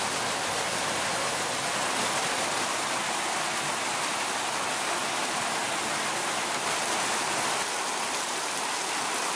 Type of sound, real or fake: real